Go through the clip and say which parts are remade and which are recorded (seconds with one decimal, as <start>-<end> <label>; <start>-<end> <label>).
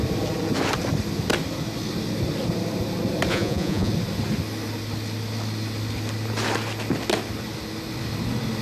0.0-3.3 recorded; 3.3-3.9 remade; 3.9-8.6 recorded